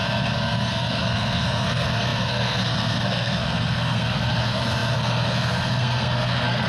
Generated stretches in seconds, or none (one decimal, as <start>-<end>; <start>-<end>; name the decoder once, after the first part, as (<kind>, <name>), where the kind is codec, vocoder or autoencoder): 0.0-6.7 (codec, SNAC)